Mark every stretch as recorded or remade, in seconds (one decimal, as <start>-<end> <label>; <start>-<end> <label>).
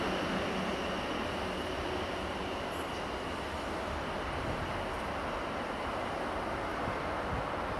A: 0.0-7.8 recorded